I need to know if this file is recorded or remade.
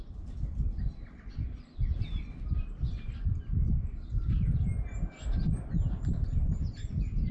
recorded